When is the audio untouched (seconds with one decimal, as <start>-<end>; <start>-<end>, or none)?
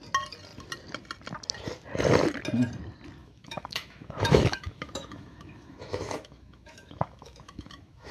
0.0-3.2